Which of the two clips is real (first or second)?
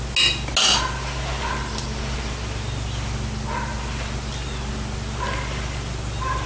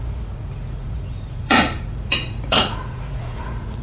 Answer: first